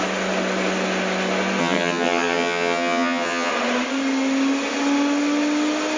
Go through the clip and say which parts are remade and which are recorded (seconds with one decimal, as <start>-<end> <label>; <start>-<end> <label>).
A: 0.0-1.6 recorded; 1.6-3.5 remade; 3.5-6.0 recorded